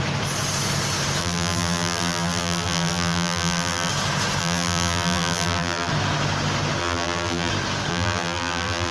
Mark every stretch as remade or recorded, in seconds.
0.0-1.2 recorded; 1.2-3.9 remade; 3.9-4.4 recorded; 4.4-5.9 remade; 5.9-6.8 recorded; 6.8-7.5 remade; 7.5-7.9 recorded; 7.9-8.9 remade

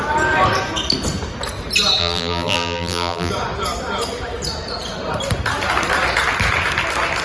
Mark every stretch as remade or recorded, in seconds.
0.0-2.0 recorded; 2.0-3.3 remade; 3.3-7.2 recorded

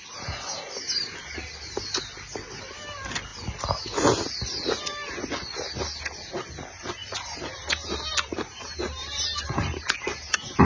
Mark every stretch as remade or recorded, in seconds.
0.0-7.0 recorded; 7.0-10.6 remade